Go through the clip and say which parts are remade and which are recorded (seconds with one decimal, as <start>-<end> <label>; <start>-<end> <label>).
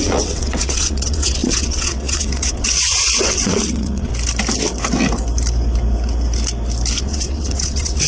0.0-4.1 remade; 4.1-7.0 recorded; 7.0-8.1 remade